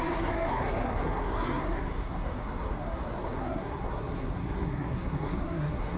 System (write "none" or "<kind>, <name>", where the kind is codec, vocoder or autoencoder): codec, SNAC